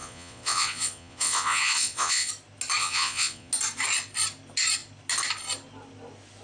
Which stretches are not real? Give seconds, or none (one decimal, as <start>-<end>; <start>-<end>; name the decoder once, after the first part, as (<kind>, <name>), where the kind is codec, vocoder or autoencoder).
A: 0.0-2.3 (vocoder, Vocos); 2.8-3.5